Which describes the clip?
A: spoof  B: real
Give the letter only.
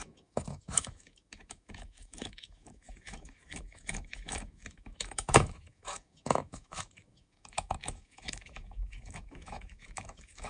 A